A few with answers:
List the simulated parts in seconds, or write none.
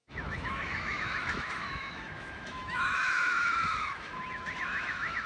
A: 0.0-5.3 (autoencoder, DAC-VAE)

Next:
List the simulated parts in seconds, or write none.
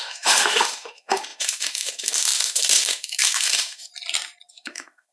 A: 0.0-3.9 (autoencoder, DAC-VAE); 4.5-5.1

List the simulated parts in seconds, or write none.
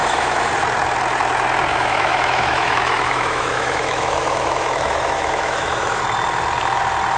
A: 0.0-0.5 (autoencoder, DAC-VAE); 1.7-6.0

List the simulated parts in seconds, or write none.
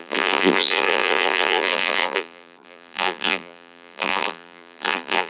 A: 0.0-5.3 (vocoder, BigVGAN v2)